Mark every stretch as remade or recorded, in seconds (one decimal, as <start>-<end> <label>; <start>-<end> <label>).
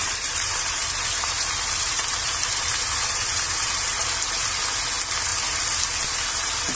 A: 0.0-4.0 remade; 4.0-6.8 recorded